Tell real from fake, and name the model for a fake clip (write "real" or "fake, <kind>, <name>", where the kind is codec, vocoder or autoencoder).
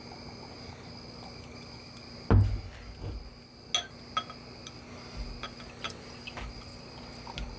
real